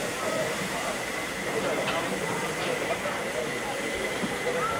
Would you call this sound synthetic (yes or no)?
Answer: yes